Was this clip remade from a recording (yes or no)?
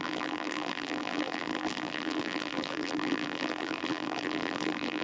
yes